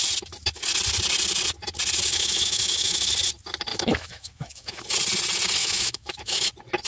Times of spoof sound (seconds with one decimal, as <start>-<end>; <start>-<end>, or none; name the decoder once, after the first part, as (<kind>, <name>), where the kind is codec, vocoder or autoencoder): 2.1-3.1 (autoencoder, DAC-VAE); 3.7-4.8; 5.6-6.5